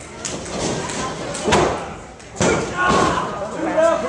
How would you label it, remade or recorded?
recorded